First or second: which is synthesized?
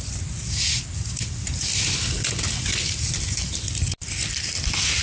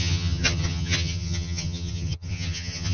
second